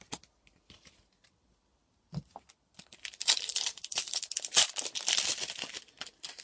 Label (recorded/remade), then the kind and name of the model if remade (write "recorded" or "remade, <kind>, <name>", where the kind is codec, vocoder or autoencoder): recorded